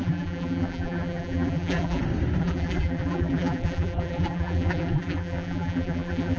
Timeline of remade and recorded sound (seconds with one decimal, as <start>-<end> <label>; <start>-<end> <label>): 0.0-2.0 remade; 2.0-2.4 recorded; 2.4-6.4 remade